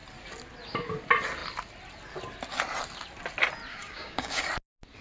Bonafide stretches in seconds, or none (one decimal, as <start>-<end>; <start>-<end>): 0.0-3.7; 4.5-5.0